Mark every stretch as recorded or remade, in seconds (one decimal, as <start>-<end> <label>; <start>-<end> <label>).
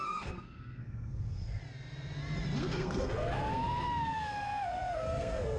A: 0.0-1.6 remade; 1.6-2.6 recorded; 2.6-5.6 remade